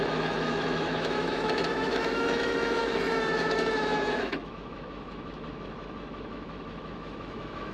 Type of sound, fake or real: fake